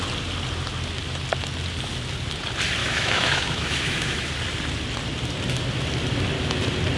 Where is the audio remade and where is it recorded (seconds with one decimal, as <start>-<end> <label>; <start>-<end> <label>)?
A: 0.0-2.8 recorded; 2.8-4.3 remade; 4.3-7.0 recorded

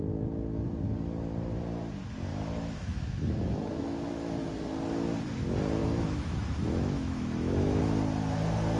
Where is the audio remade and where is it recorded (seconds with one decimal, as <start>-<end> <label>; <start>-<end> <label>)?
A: 0.0-2.3 recorded; 2.3-4.5 remade; 4.5-5.8 recorded; 5.8-7.8 remade; 7.8-8.8 recorded

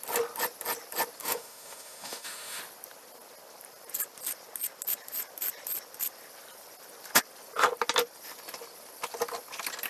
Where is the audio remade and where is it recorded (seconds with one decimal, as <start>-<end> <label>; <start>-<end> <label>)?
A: 0.0-1.2 recorded; 1.2-2.6 remade; 2.6-9.9 recorded